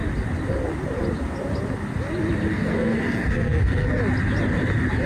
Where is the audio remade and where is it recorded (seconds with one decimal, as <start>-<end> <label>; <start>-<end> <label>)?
0.0-2.5 recorded; 2.5-4.0 remade; 4.0-5.1 recorded